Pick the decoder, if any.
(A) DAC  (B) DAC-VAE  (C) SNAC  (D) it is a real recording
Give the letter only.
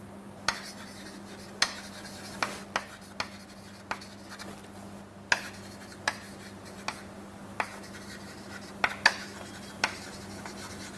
D